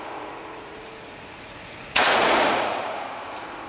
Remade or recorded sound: remade